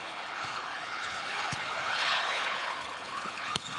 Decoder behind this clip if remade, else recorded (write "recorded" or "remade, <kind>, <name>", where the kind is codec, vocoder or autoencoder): remade, codec, HILCodec